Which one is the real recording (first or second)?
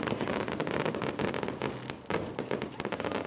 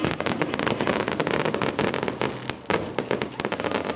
second